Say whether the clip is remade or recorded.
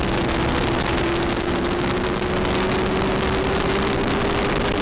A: recorded